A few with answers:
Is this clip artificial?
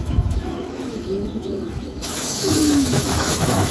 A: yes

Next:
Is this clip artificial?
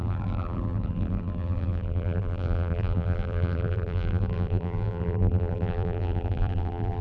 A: yes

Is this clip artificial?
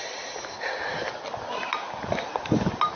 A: no